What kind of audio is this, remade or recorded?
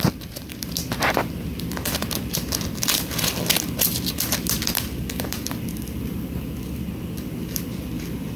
remade